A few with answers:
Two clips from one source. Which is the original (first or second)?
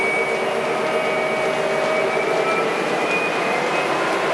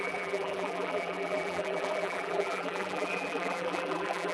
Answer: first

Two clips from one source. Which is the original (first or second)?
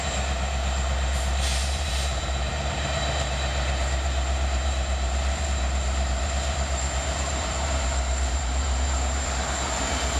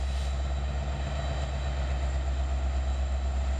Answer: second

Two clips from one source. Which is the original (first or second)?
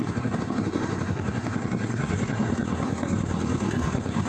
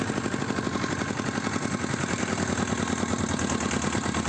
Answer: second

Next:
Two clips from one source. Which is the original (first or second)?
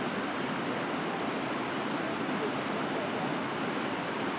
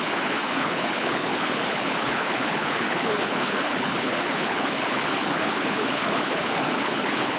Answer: first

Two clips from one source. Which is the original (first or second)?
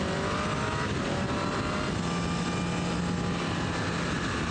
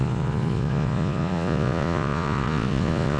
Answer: first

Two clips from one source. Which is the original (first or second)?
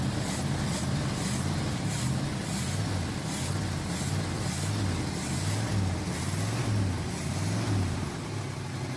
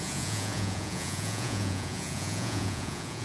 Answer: first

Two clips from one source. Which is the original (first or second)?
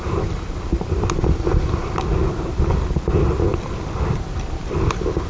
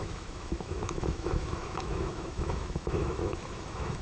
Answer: first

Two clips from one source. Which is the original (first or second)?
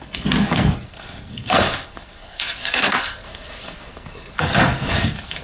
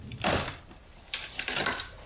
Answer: second